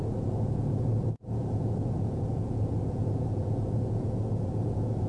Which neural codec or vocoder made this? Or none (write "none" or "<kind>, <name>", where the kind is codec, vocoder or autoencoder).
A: vocoder, Vocos